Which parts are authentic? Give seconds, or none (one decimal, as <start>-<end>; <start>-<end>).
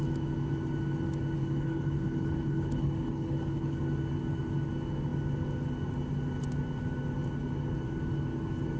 0.0-1.4; 3.8-8.8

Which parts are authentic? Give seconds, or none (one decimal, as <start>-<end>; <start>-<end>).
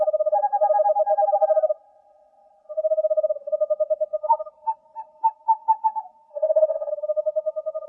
0.0-6.3; 6.9-7.9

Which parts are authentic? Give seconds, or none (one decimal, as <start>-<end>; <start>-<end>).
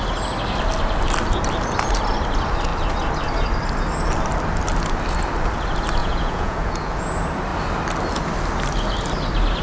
0.0-6.0; 7.1-9.6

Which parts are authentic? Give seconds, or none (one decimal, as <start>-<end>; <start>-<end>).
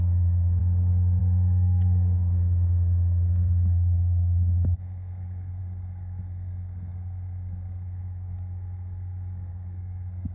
none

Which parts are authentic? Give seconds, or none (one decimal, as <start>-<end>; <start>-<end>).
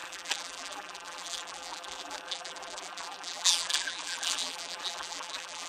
none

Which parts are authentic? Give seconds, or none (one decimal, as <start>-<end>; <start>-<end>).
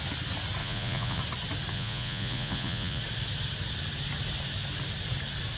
0.0-0.6; 1.2-1.7; 3.0-5.6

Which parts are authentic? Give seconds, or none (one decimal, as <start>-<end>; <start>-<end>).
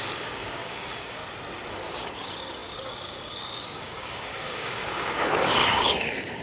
1.2-1.7